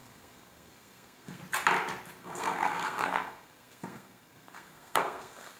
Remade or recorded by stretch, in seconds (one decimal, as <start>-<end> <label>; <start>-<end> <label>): 0.0-1.4 remade; 1.4-2.2 recorded; 2.2-5.6 remade